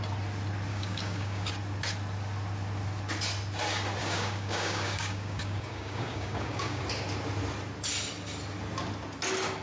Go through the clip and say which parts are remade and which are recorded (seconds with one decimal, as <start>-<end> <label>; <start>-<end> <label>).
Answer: 0.0-0.7 recorded; 0.7-1.5 remade; 1.5-4.0 recorded; 4.0-6.8 remade; 6.8-9.6 recorded